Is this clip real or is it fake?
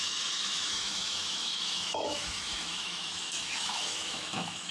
fake